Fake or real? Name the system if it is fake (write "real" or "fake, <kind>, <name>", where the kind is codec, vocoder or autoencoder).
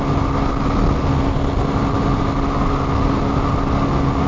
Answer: real